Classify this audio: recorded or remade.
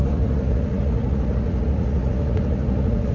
remade